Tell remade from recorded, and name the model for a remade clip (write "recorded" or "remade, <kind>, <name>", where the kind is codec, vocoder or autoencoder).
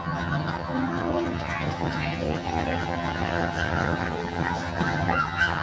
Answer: remade, vocoder, HiFi-GAN